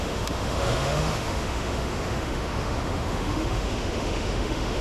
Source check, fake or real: fake